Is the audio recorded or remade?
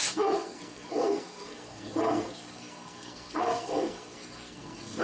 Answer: remade